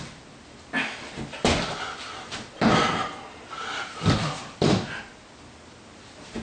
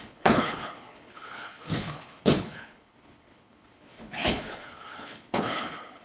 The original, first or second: first